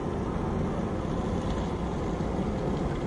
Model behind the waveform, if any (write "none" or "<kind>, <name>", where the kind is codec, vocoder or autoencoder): none